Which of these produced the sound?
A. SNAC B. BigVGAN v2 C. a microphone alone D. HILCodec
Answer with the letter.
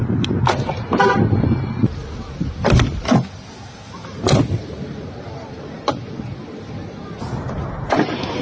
C